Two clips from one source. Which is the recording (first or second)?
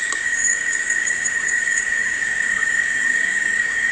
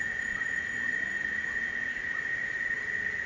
second